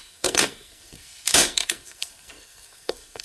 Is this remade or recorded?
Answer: remade